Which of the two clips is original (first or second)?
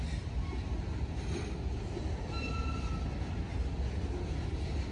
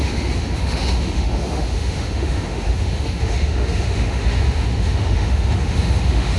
first